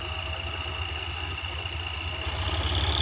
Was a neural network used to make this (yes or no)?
no